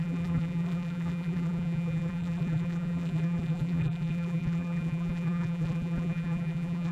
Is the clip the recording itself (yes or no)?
no